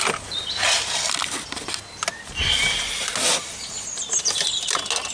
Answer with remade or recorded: recorded